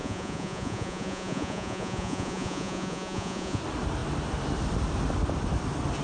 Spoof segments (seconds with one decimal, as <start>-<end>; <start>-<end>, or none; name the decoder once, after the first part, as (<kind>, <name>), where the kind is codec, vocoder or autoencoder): 0.0-3.6 (vocoder, Vocos)